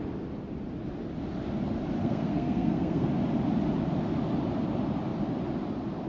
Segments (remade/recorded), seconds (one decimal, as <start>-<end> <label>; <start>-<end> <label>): 0.0-2.0 recorded; 2.0-3.1 remade; 3.1-6.1 recorded